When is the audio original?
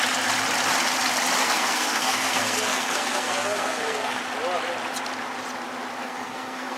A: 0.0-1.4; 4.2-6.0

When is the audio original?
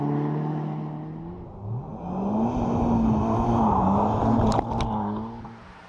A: 0.0-5.9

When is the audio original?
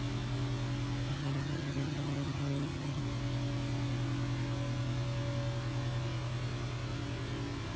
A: 0.0-1.1; 3.0-7.8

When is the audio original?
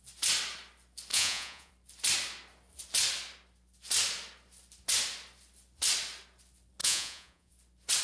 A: 0.0-1.1; 1.7-6.8; 7.5-8.0